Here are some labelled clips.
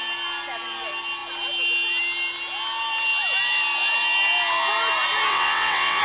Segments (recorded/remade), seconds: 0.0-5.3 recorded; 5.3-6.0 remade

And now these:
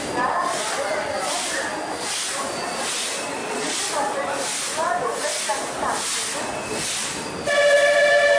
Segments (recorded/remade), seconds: 0.0-3.4 recorded; 3.4-3.9 remade; 3.9-8.4 recorded

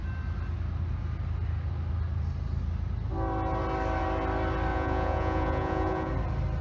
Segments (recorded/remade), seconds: 0.0-4.7 recorded; 4.7-6.1 remade; 6.1-6.6 recorded